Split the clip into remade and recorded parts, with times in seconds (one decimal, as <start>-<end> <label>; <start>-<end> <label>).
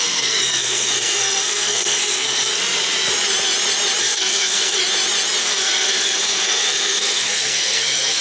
0.0-2.5 remade; 2.5-4.0 recorded; 4.0-4.8 remade; 4.8-5.4 recorded; 5.4-8.2 remade